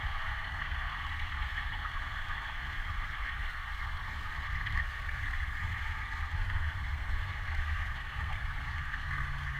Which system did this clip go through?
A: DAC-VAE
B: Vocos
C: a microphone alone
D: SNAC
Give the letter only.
D